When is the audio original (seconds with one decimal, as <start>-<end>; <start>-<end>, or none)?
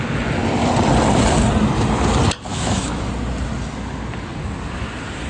0.0-2.5; 3.1-5.3